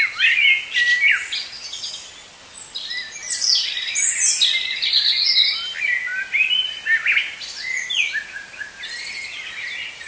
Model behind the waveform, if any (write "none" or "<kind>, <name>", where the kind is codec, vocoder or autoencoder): none